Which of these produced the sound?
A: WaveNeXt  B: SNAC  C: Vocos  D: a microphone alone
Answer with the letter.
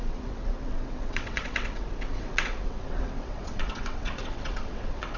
A